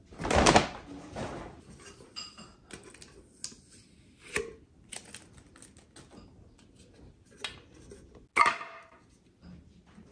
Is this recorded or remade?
recorded